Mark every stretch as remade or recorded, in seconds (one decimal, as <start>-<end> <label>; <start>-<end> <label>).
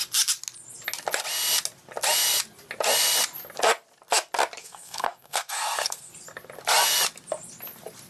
0.0-4.6 recorded; 4.6-6.1 remade; 6.1-8.1 recorded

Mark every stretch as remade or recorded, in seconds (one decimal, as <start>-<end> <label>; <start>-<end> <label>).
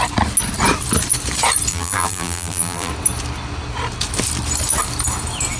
0.0-1.7 recorded; 1.7-2.9 remade; 2.9-5.6 recorded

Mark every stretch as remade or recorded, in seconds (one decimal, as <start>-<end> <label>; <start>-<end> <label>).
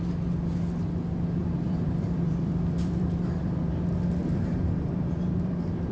0.0-1.4 recorded; 1.4-3.8 remade; 3.8-4.2 recorded; 4.2-5.9 remade